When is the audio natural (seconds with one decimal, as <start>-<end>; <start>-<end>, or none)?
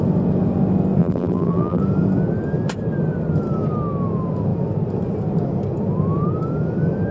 0.0-1.0; 1.8-7.1